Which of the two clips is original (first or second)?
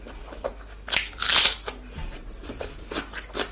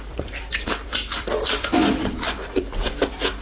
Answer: first